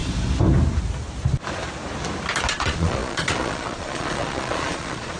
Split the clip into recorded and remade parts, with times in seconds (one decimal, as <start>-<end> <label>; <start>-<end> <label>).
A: 0.0-2.5 recorded; 2.5-5.2 remade

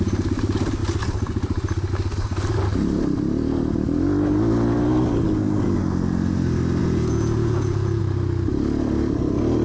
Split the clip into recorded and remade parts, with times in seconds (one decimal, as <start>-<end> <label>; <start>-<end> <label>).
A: 0.0-6.8 recorded; 6.8-8.0 remade; 8.0-9.6 recorded

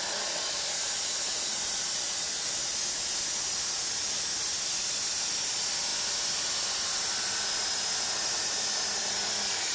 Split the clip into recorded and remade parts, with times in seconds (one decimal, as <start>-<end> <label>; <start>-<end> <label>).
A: 0.0-9.7 recorded

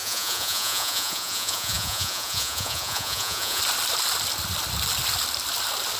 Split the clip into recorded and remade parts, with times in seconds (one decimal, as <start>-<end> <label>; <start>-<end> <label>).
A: 0.0-3.6 remade; 3.6-6.0 recorded

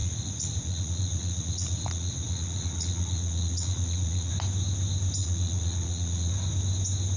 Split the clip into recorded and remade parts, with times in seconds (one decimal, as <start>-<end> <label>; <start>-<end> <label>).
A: 0.0-4.3 remade; 4.3-5.2 recorded; 5.2-6.3 remade; 6.3-7.2 recorded

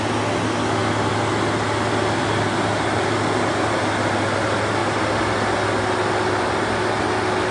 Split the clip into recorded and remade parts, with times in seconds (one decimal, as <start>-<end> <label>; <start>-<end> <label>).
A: 0.0-7.5 recorded